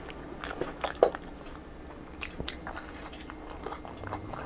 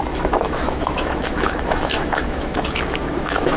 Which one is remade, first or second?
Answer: second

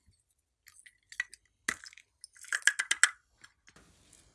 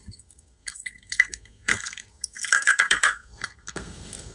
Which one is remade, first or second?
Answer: second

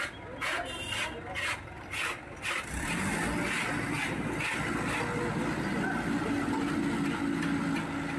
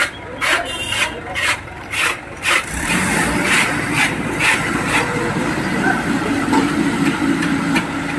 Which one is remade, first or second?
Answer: second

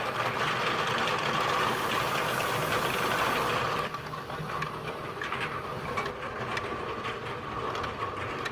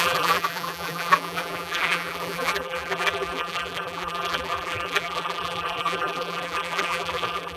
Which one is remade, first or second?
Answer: second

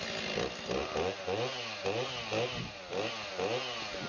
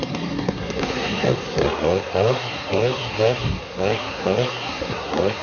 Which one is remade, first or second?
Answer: second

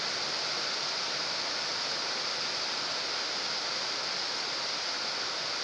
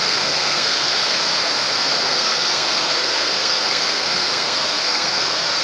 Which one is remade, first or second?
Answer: second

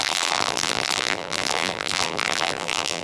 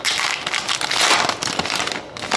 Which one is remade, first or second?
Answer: first